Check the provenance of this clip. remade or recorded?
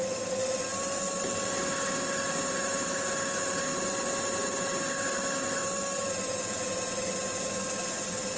recorded